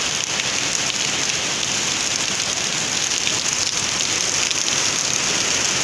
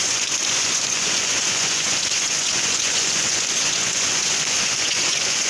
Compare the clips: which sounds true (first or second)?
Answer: first